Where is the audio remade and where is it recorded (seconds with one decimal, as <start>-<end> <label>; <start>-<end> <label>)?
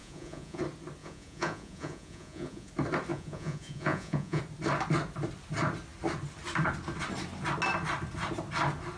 0.0-0.6 remade; 0.6-1.0 recorded; 1.0-2.7 remade; 2.7-3.1 recorded; 3.1-4.4 remade; 4.4-9.0 recorded